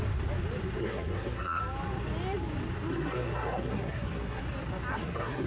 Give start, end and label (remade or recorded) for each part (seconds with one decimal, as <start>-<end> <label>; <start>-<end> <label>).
0.0-0.8 recorded; 0.8-1.6 remade; 1.6-2.9 recorded; 2.9-4.4 remade; 4.4-4.9 recorded; 4.9-5.5 remade

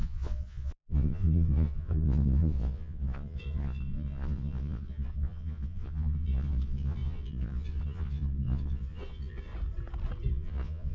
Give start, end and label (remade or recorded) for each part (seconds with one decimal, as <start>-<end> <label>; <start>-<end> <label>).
0.0-9.5 remade; 9.5-10.3 recorded; 10.3-10.9 remade

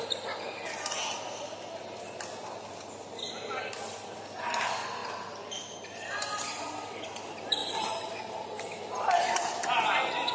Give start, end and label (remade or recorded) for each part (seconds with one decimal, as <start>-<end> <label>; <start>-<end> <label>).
0.0-10.3 recorded

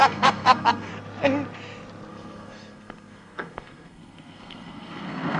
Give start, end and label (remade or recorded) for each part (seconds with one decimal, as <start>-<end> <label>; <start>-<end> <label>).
0.0-0.9 remade; 0.9-2.1 recorded; 2.1-5.4 remade

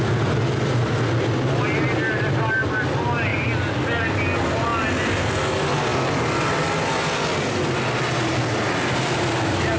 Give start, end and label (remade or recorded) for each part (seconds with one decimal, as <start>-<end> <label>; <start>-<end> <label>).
0.0-9.8 recorded